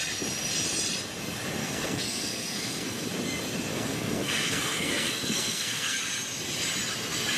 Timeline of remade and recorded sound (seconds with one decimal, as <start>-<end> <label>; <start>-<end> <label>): 0.0-1.6 recorded; 1.6-3.1 remade; 3.1-3.7 recorded; 3.7-6.0 remade; 6.0-7.4 recorded